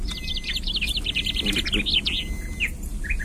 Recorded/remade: recorded